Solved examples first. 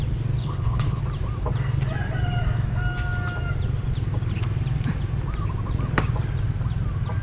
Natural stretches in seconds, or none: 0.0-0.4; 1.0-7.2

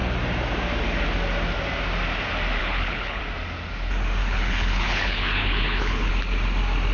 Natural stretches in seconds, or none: 0.0-2.6; 3.2-4.2; 6.1-6.9

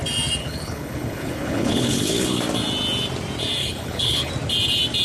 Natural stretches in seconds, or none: 0.0-0.4; 2.4-3.6; 4.3-5.0

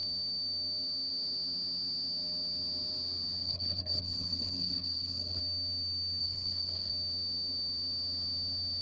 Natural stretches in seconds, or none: 0.0-3.4; 5.4-6.2; 6.9-8.8

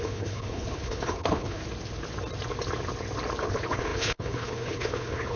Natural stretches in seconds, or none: 1.6-3.4